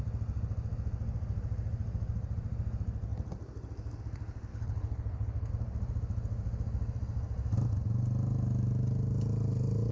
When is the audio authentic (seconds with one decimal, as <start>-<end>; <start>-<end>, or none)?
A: 0.0-4.5; 5.5-9.9